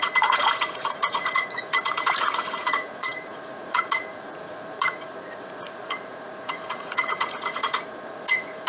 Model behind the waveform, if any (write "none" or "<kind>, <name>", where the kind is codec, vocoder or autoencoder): vocoder, Vocos